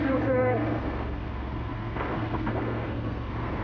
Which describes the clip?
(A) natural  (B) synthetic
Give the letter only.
B